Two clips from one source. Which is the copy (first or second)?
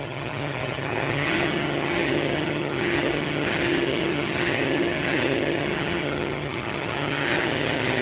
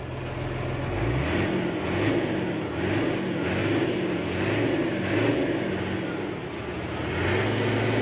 first